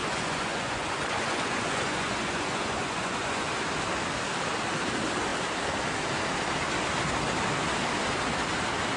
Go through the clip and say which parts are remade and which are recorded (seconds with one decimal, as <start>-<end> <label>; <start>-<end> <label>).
0.0-3.5 remade; 3.5-9.0 recorded

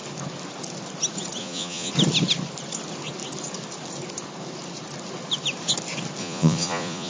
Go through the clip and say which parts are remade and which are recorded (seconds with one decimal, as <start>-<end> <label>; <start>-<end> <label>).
0.0-1.4 recorded; 1.4-1.9 remade; 1.9-6.2 recorded; 6.2-7.1 remade